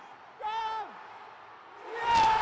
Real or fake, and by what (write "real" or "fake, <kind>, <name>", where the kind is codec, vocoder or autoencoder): real